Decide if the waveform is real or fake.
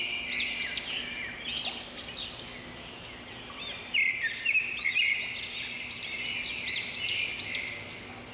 real